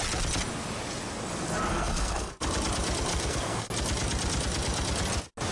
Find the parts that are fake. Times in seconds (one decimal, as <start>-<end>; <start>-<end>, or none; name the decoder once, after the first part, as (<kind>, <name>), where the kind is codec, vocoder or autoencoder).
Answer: 1.7-2.3 (codec, SNAC); 3.1-3.7